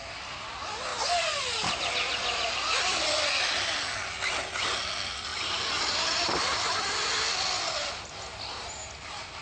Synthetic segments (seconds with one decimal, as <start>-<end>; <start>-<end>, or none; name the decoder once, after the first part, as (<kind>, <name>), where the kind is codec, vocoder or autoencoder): none